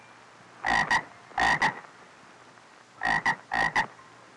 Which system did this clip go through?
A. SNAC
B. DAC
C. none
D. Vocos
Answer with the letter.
C